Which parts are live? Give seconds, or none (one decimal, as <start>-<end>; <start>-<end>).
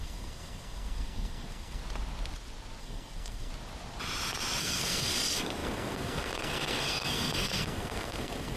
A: 1.8-2.8; 3.5-4.6